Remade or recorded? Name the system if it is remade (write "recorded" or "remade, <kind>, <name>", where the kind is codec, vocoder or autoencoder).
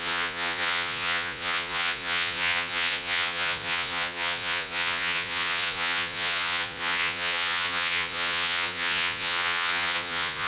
remade, vocoder, Vocos